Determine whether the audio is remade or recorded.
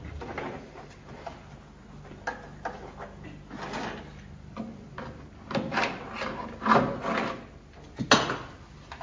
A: recorded